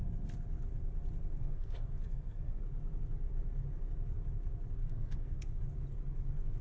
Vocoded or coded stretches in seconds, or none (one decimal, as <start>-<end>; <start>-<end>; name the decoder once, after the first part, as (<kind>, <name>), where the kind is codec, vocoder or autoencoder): 1.4-2.6 (codec, SNAC); 4.8-5.6